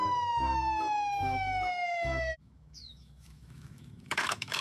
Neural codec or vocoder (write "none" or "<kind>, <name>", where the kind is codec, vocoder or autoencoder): autoencoder, DAC-VAE